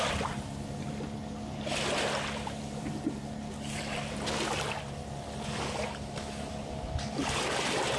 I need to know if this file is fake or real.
real